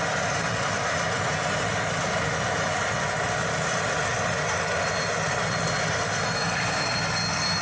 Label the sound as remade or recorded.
recorded